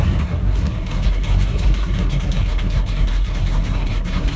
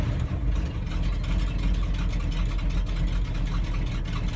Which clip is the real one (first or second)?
second